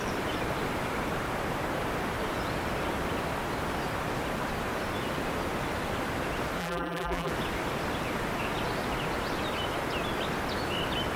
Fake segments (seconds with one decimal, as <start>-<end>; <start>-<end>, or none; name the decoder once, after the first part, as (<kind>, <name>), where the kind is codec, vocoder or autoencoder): 6.6-7.3 (vocoder, BigVGAN v2)